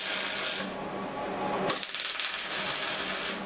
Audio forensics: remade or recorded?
recorded